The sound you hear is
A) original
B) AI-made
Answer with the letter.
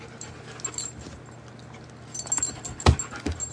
A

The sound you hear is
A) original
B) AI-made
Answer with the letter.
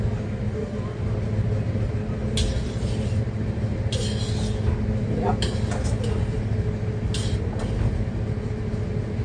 A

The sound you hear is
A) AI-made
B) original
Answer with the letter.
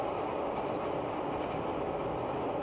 B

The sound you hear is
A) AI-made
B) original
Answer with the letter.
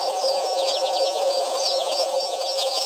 A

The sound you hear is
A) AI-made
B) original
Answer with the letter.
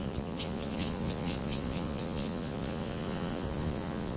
A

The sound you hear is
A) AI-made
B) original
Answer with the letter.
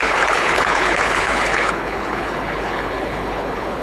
A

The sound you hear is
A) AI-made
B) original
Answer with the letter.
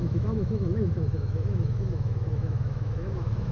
A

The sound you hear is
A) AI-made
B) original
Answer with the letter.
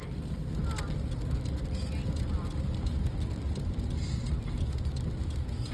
B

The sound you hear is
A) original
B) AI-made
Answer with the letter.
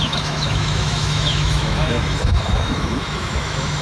B